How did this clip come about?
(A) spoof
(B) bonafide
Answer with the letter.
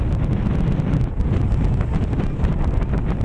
B